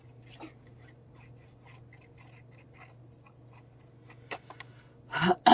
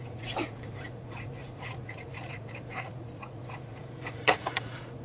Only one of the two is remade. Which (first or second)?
second